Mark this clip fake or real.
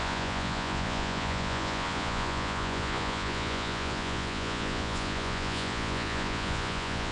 fake